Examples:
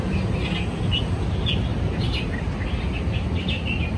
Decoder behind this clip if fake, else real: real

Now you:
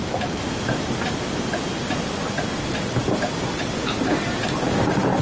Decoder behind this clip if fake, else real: real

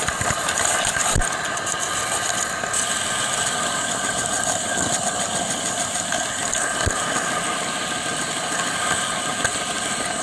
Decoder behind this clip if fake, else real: real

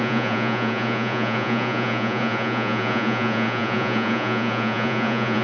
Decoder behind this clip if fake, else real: fake, vocoder, Vocos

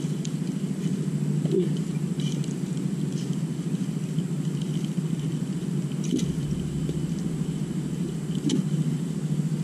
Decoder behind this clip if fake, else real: real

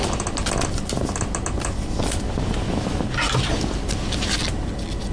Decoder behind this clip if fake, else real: real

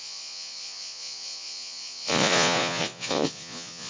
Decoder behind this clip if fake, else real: fake, vocoder, Vocos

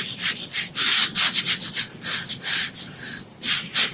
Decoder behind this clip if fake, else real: real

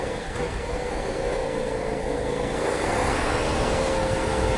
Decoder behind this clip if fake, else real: fake, codec, SNAC